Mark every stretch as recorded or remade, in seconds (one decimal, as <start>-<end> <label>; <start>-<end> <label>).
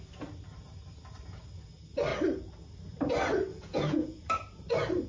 0.0-3.5 recorded; 3.5-4.2 remade; 4.2-5.1 recorded